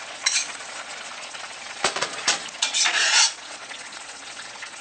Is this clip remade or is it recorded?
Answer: remade